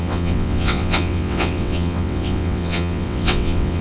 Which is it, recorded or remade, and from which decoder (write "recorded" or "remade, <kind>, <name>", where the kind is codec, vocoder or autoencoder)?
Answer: remade, vocoder, WaveNeXt